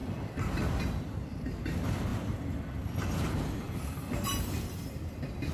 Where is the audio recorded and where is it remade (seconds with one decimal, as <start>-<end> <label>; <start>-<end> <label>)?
0.0-5.5 remade